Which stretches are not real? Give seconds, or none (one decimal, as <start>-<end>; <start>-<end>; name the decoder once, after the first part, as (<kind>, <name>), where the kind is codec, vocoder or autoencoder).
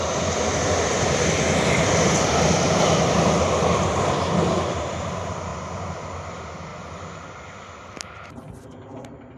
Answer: none